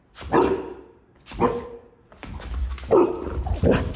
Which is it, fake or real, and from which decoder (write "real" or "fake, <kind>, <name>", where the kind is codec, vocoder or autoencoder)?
real